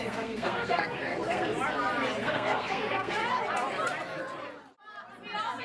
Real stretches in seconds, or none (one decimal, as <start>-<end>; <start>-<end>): 1.5-2.2; 3.2-5.6